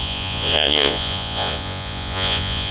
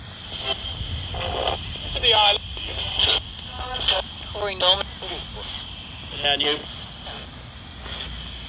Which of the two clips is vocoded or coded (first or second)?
first